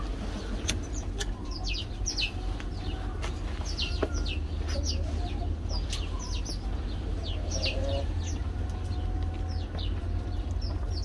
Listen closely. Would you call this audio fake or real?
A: real